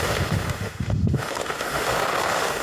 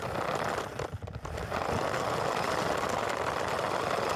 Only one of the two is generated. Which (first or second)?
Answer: first